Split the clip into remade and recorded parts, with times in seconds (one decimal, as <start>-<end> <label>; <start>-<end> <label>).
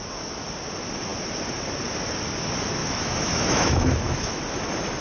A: 0.0-2.8 recorded; 2.8-4.4 remade; 4.4-5.0 recorded